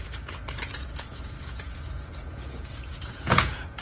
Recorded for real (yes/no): no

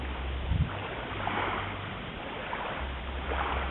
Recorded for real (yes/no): yes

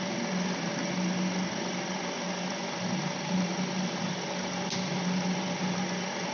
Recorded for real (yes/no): yes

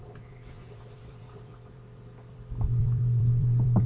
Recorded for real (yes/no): no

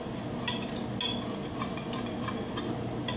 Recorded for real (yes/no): yes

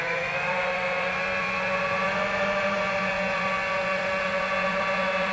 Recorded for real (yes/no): no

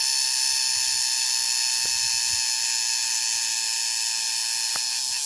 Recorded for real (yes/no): yes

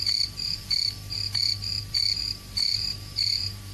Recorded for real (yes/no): no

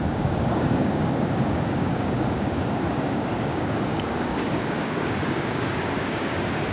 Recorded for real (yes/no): no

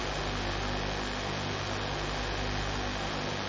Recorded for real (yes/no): yes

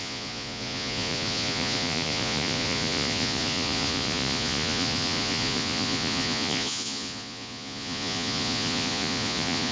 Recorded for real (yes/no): no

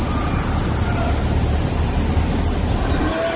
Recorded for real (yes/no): yes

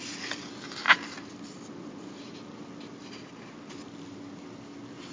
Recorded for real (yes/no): yes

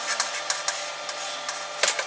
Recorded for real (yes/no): yes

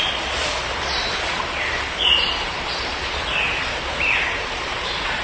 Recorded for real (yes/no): no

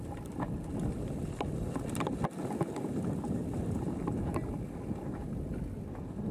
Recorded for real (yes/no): yes